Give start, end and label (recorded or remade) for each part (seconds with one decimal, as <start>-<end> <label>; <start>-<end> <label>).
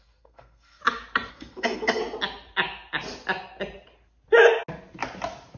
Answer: 0.0-0.8 remade; 0.8-1.3 recorded; 1.3-2.0 remade; 2.0-5.6 recorded